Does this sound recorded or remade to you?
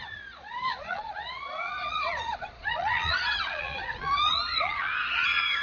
remade